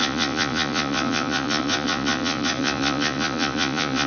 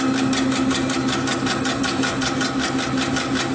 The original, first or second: second